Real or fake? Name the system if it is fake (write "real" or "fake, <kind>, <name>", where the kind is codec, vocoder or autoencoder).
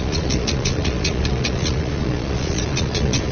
fake, vocoder, Vocos